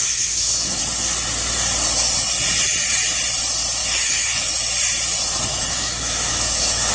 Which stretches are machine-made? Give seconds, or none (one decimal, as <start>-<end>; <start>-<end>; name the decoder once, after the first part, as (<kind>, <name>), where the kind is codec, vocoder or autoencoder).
0.0-0.8 (autoencoder, DAC-VAE); 3.8-4.5; 5.5-6.9